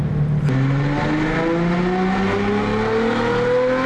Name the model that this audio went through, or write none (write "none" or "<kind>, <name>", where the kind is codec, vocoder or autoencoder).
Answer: none